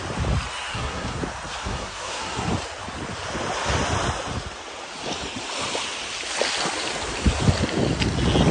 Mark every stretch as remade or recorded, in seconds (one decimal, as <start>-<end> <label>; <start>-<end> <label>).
0.0-0.7 recorded; 0.7-1.2 remade; 1.2-1.6 recorded; 1.6-2.5 remade; 2.5-8.5 recorded